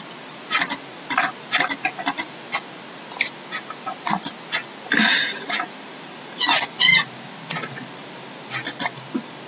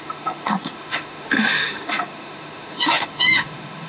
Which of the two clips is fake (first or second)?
second